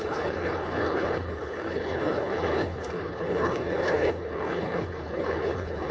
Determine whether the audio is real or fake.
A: fake